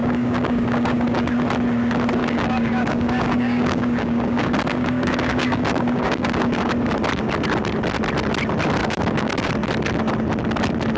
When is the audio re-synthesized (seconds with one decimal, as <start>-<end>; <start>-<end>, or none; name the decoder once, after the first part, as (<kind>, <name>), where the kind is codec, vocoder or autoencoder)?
0.0-1.3 (codec, DAC); 2.2-6.7; 8.8-9.5